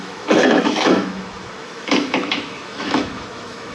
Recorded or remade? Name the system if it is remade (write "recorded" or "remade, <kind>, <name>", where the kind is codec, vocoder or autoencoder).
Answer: remade, autoencoder, DAC-VAE